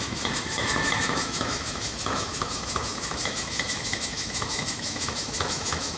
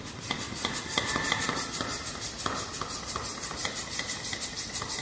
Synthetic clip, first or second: first